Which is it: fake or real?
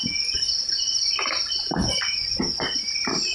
real